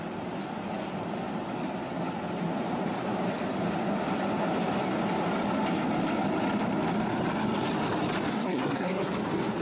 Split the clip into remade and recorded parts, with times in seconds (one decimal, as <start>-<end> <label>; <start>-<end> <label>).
0.0-8.3 recorded; 8.3-9.1 remade; 9.1-9.6 recorded